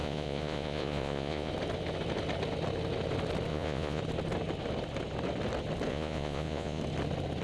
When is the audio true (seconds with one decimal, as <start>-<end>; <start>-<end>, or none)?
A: 1.5-3.5; 4.0-5.9; 6.8-7.4